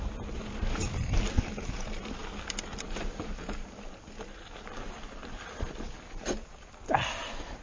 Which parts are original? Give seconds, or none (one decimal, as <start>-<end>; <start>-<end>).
0.0-7.6